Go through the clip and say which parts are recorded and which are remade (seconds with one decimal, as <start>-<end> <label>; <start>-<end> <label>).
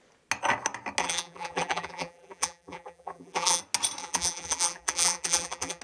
0.0-1.0 recorded; 1.0-3.6 remade; 3.6-4.0 recorded; 4.0-5.8 remade